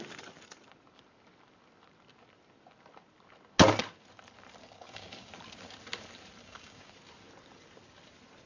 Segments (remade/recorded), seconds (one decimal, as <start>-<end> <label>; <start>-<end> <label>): 0.0-4.6 recorded; 4.6-5.3 remade; 5.3-6.4 recorded; 6.4-6.9 remade; 6.9-8.5 recorded